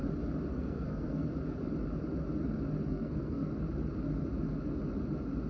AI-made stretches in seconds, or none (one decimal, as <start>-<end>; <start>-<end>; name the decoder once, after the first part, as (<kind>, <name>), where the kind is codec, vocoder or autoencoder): 0.5-1.3 (codec, SNAC); 2.9-3.5